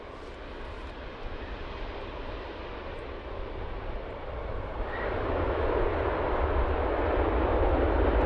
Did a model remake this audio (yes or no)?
no